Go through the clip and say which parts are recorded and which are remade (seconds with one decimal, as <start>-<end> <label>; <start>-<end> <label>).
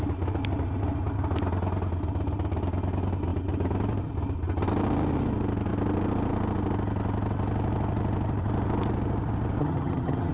0.0-9.6 recorded; 9.6-10.3 remade